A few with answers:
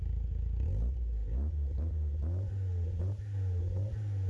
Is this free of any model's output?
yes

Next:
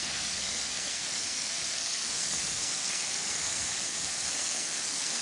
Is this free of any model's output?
no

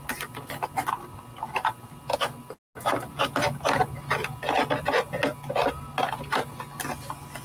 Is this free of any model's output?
yes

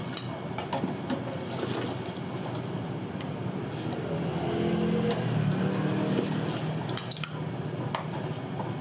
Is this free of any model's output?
yes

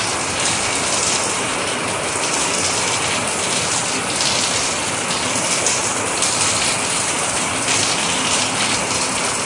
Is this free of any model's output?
yes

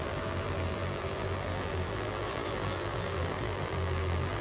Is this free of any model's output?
no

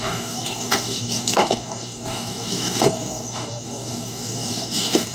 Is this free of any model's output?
no